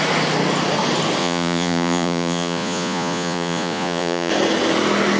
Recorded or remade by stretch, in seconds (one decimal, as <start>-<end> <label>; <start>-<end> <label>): 0.0-1.2 recorded; 1.2-4.3 remade; 4.3-5.2 recorded